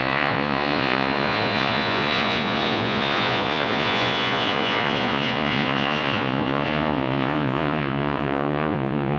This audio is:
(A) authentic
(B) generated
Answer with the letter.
B